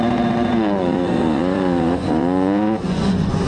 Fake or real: fake